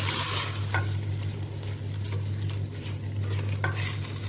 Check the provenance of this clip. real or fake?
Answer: real